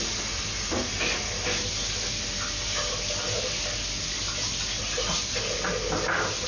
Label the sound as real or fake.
real